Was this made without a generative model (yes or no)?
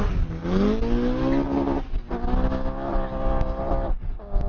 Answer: yes